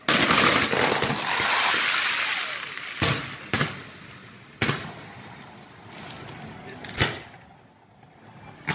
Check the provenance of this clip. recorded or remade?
recorded